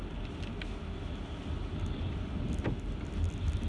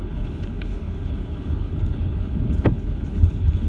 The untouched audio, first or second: first